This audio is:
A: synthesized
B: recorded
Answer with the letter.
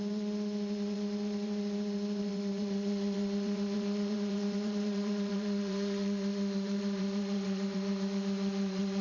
A